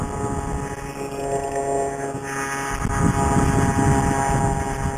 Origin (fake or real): real